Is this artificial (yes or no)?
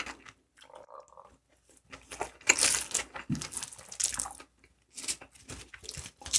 no